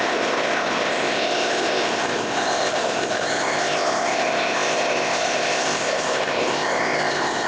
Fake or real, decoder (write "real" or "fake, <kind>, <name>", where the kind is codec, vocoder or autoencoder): fake, codec, ZipCodec